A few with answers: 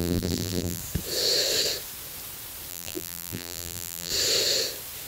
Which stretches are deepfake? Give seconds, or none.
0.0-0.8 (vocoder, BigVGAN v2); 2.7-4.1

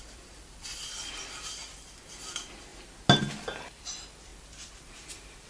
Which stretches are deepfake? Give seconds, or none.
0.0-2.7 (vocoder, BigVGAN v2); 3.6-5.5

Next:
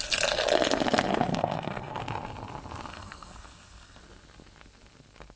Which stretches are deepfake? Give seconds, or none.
1.3-2.0 (codec, SNAC); 2.9-4.0

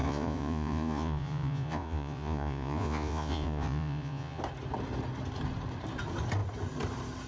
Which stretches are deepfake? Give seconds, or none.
0.0-4.4 (vocoder, Vocos)

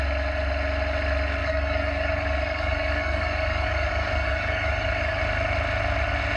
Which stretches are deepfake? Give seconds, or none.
1.4-5.2 (codec, DAC)

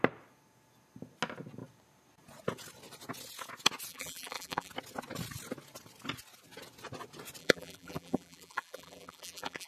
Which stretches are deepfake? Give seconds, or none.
3.9-4.7 (vocoder, BigVGAN v2); 7.4-9.7

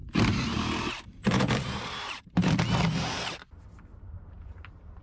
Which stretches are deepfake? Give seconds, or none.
1.1-2.4 (vocoder, BigVGAN v2); 3.9-5.0